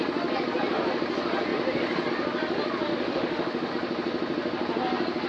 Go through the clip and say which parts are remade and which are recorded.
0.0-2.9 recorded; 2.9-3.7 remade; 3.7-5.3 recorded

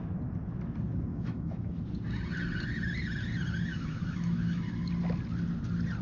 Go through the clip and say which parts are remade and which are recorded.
0.0-1.1 recorded; 1.1-1.8 remade; 1.8-3.7 recorded; 3.7-4.9 remade; 4.9-6.0 recorded

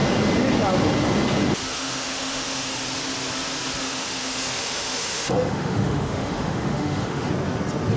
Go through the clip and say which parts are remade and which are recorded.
0.0-1.7 recorded; 1.7-2.8 remade; 2.8-3.8 recorded; 3.8-7.3 remade; 7.3-8.0 recorded

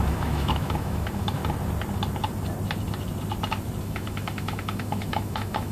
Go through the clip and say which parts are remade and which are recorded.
0.0-1.4 remade; 1.4-3.8 recorded; 3.8-5.7 remade

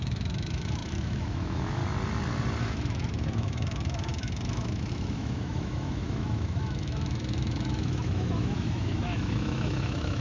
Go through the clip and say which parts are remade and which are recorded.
0.0-1.8 remade; 1.8-2.6 recorded; 2.6-10.2 remade

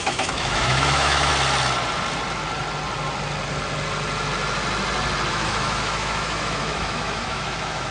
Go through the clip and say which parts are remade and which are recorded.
0.0-1.3 remade; 1.3-5.3 recorded; 5.3-7.9 remade

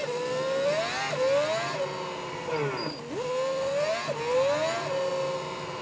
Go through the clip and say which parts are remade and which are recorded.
0.0-5.8 recorded